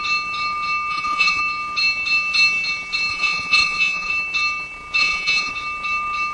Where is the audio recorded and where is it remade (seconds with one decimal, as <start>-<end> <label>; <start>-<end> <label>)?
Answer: 0.0-0.9 recorded; 0.9-1.4 remade; 1.4-3.1 recorded; 3.1-4.1 remade; 4.1-5.0 recorded; 5.0-5.5 remade; 5.5-6.3 recorded